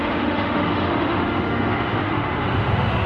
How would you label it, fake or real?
fake